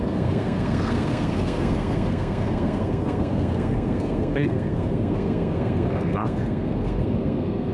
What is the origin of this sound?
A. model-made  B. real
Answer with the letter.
A